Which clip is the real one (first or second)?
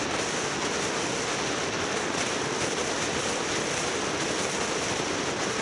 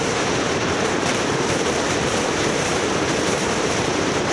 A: first